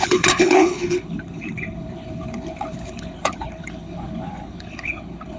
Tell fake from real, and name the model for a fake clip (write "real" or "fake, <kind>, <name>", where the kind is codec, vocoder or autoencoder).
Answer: fake, codec, HILCodec